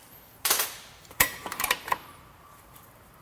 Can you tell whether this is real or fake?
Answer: fake